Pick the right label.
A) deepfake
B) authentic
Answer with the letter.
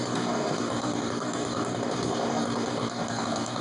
A